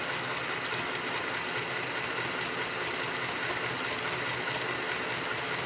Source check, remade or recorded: recorded